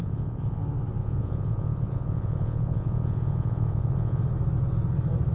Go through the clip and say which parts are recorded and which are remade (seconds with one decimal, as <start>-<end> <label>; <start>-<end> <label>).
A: 0.0-0.6 remade; 0.6-1.0 recorded; 1.0-4.2 remade; 4.2-5.3 recorded